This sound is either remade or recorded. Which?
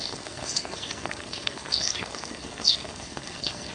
remade